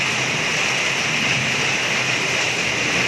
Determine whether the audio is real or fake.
real